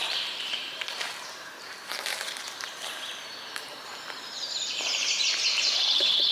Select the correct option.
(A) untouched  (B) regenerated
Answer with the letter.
B